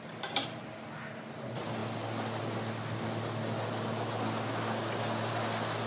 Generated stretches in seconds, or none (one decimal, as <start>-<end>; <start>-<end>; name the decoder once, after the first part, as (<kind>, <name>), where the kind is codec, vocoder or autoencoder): none